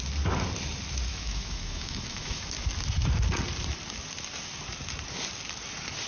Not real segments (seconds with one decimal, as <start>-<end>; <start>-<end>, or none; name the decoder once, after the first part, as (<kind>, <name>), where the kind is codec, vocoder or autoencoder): 1.1-2.4 (autoencoder, DAC-VAE)